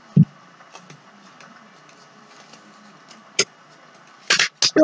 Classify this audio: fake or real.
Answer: real